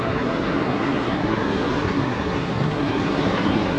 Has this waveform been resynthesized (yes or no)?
yes